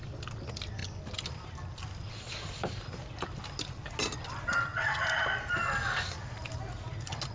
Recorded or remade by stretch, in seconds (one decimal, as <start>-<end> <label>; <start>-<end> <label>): 0.0-7.3 recorded